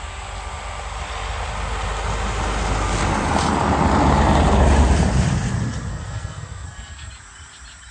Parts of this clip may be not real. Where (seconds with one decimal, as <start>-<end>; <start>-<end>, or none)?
5.9-7.1